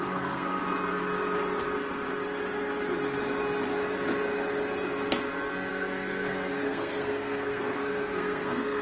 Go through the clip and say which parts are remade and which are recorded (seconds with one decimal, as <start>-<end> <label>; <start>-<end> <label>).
0.0-0.6 remade; 0.6-5.7 recorded; 5.7-8.8 remade